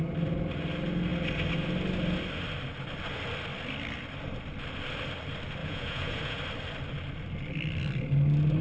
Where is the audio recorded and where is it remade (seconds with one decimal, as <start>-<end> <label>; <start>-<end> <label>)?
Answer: 0.0-5.6 recorded; 5.6-6.4 remade; 6.4-8.6 recorded